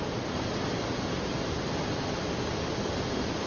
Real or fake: real